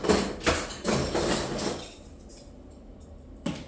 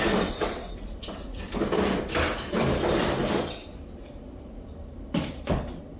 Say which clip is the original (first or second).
first